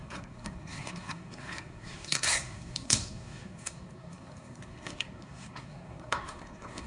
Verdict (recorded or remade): remade